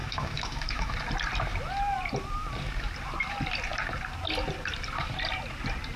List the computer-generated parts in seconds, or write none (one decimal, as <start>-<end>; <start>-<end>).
0.0-0.9